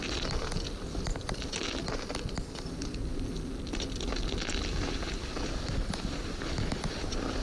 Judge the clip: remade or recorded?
recorded